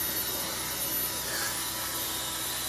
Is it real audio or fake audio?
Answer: real